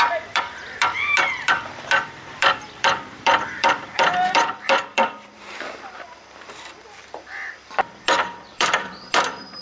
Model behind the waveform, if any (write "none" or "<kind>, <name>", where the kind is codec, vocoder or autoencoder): vocoder, BigVGAN v2